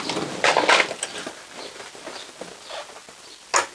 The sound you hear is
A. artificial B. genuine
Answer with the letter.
B